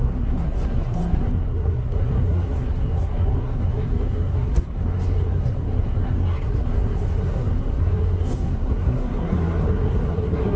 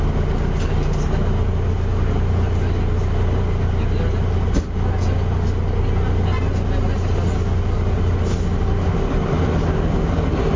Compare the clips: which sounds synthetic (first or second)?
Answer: first